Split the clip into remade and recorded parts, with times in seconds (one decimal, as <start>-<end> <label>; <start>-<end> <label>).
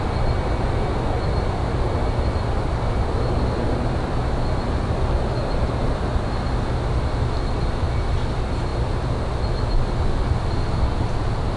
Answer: 0.0-11.6 recorded